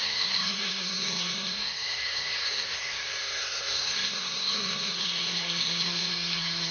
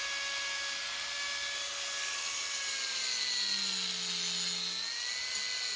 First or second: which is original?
second